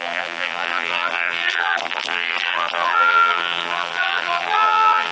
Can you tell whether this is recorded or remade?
remade